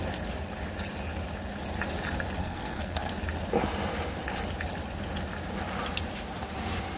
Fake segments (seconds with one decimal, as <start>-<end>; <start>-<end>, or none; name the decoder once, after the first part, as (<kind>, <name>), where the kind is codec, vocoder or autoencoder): 2.4-3.1 (codec, SNAC)